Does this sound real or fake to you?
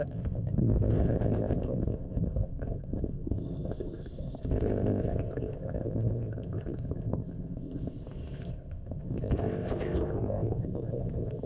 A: fake